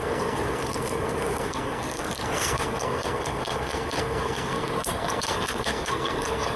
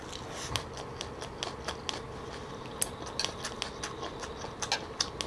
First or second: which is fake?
first